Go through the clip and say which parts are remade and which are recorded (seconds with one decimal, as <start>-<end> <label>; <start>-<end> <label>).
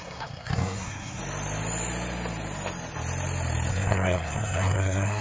0.0-1.2 remade; 1.2-3.7 recorded; 3.7-5.2 remade